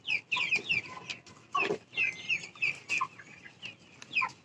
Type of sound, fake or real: real